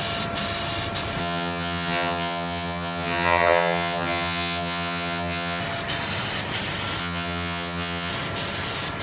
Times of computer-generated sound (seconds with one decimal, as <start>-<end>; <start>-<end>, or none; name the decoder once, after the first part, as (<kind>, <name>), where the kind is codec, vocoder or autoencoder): 1.2-5.6 (vocoder, HiFi-GAN); 7.0-8.1